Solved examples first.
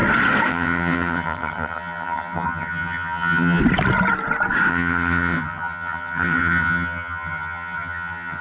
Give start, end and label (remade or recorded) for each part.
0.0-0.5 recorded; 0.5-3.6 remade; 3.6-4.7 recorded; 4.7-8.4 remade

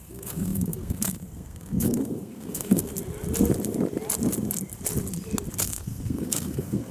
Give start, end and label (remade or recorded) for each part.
0.0-2.9 remade; 2.9-5.6 recorded; 5.6-6.9 remade

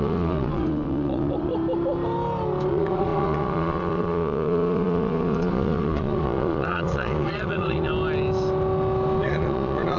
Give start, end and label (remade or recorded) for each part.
0.0-1.5 remade; 1.5-2.7 recorded; 2.7-7.9 remade; 7.9-9.2 recorded; 9.2-10.0 remade

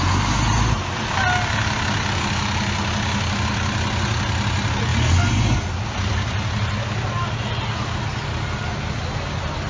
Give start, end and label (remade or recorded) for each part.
0.0-9.7 recorded

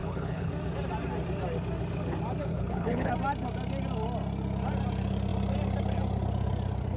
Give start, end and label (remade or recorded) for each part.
0.0-0.5 remade; 0.5-2.5 recorded; 2.5-3.1 remade; 3.1-7.0 recorded

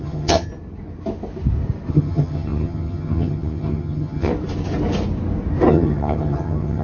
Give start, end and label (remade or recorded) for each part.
0.0-0.5 remade; 0.5-1.9 recorded; 1.9-4.3 remade; 4.3-5.7 recorded; 5.7-6.8 remade

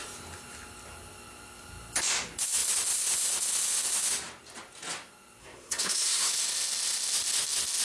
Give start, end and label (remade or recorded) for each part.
0.0-5.4 recorded; 5.4-6.3 remade; 6.3-7.8 recorded

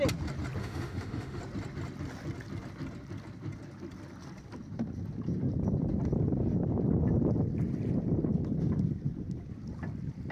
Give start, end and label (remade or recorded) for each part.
0.0-0.6 recorded; 0.6-1.4 remade; 1.4-10.3 recorded